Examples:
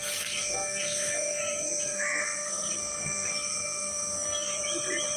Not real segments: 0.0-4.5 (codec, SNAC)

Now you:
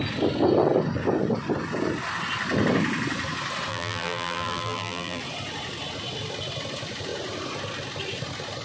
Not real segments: 3.7-5.2 (vocoder, BigVGAN v2)

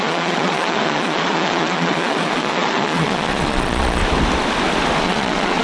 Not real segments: 0.0-4.0 (vocoder, Vocos); 5.0-5.6

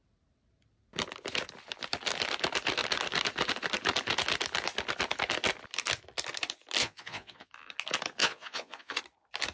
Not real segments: 6.8-7.5 (vocoder, Vocos); 8.2-9.0

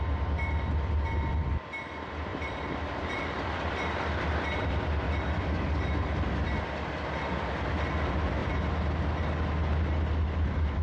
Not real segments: 2.3-7.5 (vocoder, BigVGAN v2)

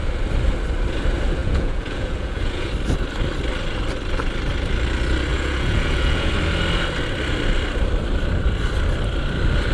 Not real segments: 1.4-2.7 (vocoder, Vocos); 5.3-6.3

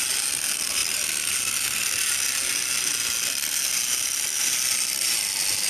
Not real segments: 0.0-5.7 (vocoder, BigVGAN v2)

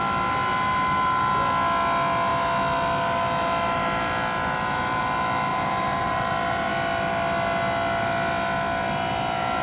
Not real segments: 5.5-6.7 (vocoder, BigVGAN v2)